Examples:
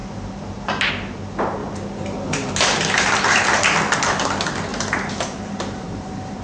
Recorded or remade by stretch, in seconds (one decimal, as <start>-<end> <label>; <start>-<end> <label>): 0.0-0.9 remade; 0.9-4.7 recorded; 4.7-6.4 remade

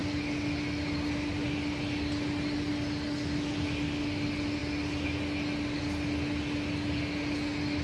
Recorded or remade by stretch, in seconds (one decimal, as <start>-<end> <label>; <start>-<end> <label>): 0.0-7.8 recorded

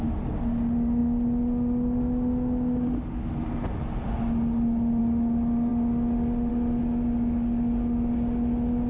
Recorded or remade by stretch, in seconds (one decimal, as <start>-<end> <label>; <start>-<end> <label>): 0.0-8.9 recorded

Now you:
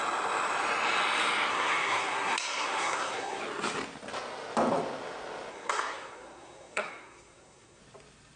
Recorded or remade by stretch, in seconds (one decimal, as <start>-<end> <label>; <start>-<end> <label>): 0.0-1.5 recorded; 1.5-3.4 remade; 3.4-5.5 recorded; 5.5-7.8 remade; 7.8-8.4 recorded

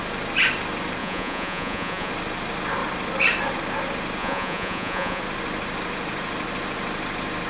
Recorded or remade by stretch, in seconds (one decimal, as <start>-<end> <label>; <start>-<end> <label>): 0.0-1.0 recorded; 1.0-2.1 remade; 2.1-4.2 recorded; 4.2-5.2 remade; 5.2-7.5 recorded